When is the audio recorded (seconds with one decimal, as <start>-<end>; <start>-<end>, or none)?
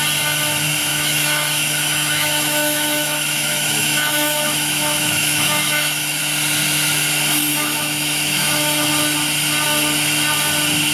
0.0-0.9; 6.2-7.5; 8.9-10.9